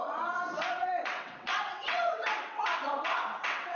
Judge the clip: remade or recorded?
remade